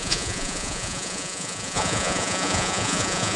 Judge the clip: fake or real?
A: fake